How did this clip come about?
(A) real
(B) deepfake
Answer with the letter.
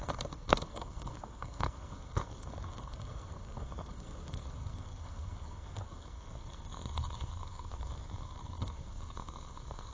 B